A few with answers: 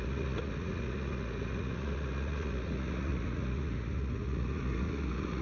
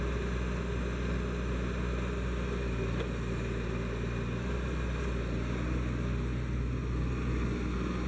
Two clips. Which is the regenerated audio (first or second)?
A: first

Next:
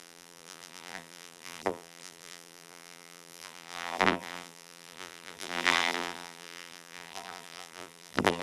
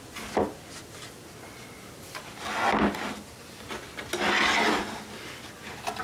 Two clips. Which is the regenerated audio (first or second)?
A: first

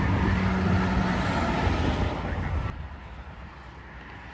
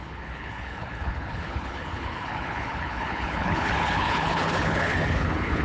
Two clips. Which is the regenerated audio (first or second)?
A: second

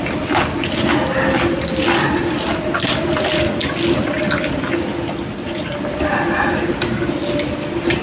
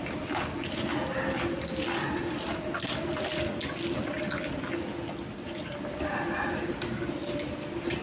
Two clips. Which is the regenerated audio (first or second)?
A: first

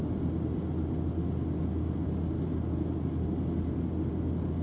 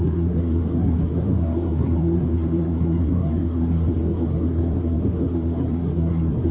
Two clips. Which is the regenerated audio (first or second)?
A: second